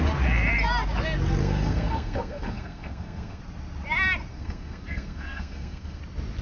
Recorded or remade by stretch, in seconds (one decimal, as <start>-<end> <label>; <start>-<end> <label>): 0.0-1.4 recorded; 1.4-3.4 remade; 3.4-4.3 recorded; 4.3-6.0 remade; 6.0-6.4 recorded